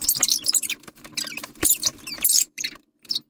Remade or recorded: remade